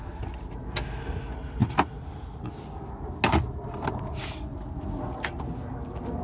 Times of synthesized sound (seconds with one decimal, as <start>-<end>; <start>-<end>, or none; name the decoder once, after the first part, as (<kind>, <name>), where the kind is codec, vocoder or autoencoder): none